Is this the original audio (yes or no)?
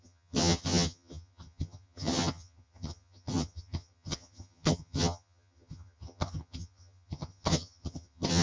no